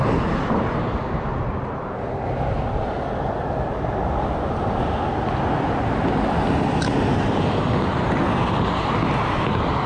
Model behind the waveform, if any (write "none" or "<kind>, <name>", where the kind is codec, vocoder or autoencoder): none